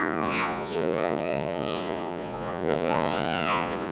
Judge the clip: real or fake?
fake